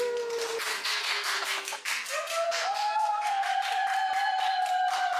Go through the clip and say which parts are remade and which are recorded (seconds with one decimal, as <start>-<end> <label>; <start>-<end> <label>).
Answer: 0.0-0.7 recorded; 0.7-3.5 remade; 3.5-5.2 recorded